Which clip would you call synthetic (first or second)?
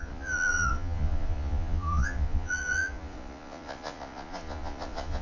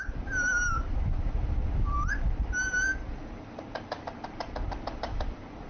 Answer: first